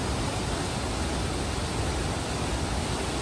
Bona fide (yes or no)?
yes